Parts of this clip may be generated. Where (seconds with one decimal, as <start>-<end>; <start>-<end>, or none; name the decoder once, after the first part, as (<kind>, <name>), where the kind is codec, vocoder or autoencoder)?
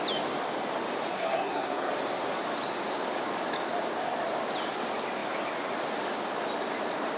1.1-1.9 (codec, SNAC)